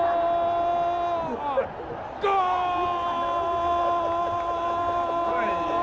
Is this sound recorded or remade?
recorded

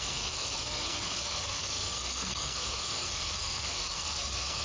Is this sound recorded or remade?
remade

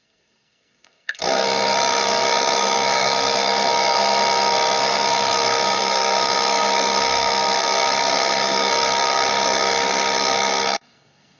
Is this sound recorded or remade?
remade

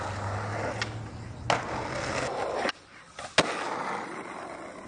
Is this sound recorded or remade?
recorded